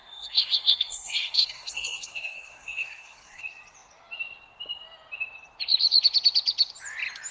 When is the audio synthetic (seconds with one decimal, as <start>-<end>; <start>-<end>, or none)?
0.0-3.4